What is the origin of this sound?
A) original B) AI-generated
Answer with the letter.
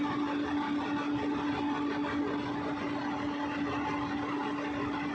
A